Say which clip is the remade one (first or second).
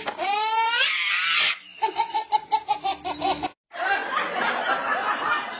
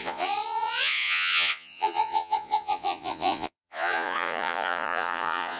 second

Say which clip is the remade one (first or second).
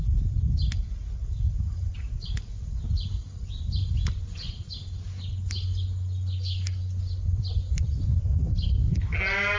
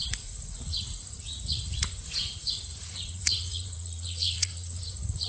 second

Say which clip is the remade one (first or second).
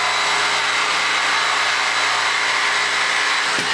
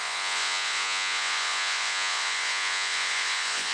second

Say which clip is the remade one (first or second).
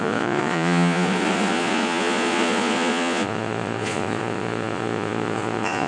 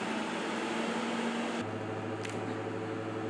first